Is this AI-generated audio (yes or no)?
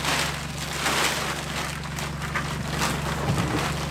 no